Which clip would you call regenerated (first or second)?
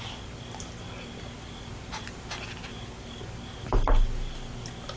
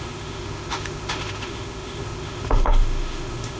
second